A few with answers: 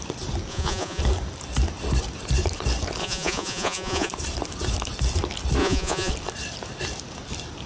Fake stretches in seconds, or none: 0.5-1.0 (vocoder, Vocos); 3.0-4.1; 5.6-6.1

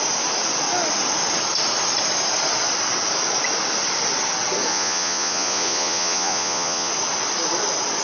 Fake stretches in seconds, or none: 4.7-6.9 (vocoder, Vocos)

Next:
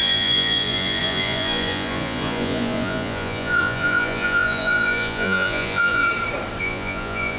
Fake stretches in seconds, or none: 0.0-6.1 (vocoder, Vocos); 6.6-7.4

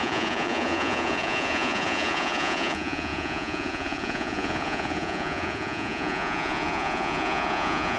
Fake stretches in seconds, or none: 0.0-8.0 (vocoder, Vocos)